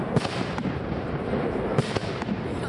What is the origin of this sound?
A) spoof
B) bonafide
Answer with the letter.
B